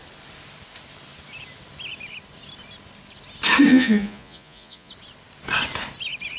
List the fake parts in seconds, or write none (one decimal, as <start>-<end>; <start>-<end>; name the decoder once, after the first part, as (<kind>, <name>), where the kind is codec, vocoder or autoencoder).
3.7-4.9 (vocoder, Vocos)